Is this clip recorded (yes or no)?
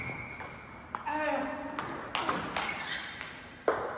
yes